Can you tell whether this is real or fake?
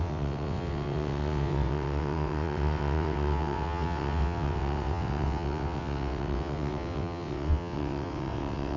fake